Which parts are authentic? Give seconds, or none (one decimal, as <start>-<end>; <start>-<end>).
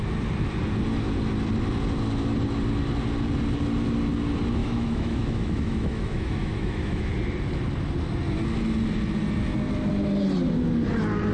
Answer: 0.0-4.6; 7.1-11.3